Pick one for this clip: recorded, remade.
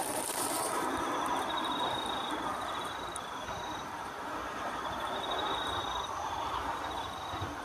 remade